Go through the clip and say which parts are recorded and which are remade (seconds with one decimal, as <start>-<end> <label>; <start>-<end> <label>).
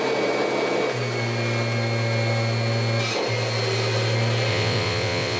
0.0-4.5 recorded; 4.5-5.4 remade